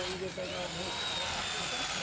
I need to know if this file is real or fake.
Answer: real